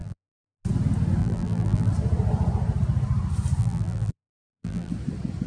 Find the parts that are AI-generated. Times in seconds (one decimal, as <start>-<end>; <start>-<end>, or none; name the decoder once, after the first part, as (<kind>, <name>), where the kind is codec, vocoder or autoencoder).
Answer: 0.0-0.6 (vocoder, BigVGAN v2); 1.2-1.9; 3.6-4.9